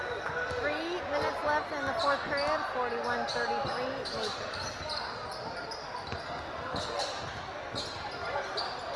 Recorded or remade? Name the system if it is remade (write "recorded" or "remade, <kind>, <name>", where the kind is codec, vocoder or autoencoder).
recorded